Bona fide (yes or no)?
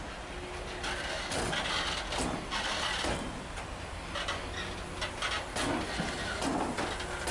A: yes